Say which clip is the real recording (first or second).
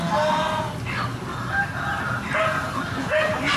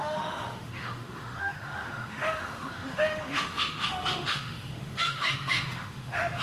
first